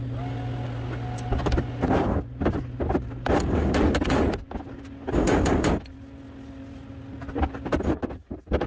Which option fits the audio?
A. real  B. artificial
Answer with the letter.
A